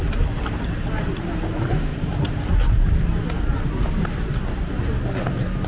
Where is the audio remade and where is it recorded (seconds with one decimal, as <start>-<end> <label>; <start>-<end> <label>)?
0.0-5.7 recorded